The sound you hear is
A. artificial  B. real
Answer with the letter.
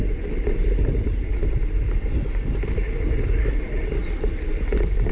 B